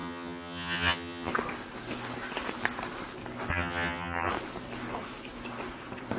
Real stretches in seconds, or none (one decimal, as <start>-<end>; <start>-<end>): 1.3-3.5; 4.3-6.2